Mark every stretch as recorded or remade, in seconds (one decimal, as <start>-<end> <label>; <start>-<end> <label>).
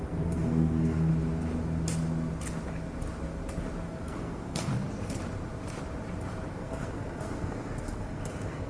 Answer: 0.0-1.1 remade; 1.1-4.0 recorded; 4.0-4.7 remade; 4.7-6.5 recorded; 6.5-8.7 remade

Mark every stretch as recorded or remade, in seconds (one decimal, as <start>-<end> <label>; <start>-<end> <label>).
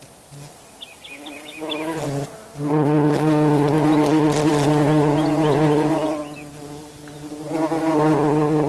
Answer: 0.0-8.7 recorded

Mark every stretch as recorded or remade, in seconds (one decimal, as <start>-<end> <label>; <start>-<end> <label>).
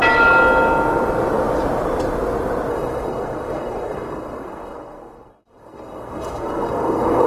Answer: 0.0-2.7 recorded; 2.7-7.3 remade